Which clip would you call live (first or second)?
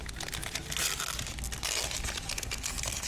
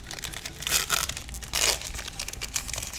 first